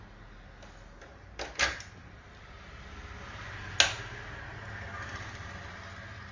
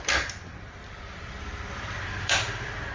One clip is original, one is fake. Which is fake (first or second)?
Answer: second